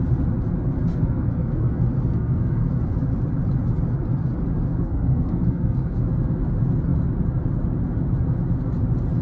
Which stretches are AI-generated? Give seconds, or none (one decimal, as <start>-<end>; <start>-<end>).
0.9-1.7; 2.1-2.7; 4.7-6.0